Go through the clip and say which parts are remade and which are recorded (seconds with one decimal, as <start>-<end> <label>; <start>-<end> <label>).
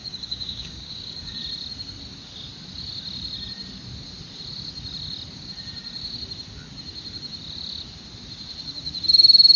0.0-1.4 remade; 1.4-9.6 recorded